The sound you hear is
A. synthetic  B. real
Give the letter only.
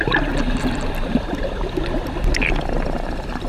B